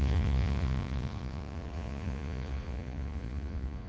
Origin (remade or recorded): remade